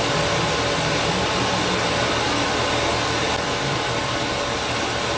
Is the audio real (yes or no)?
yes